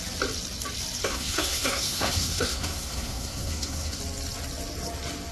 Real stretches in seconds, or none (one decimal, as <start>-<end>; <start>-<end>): 0.0-1.0; 4.0-5.3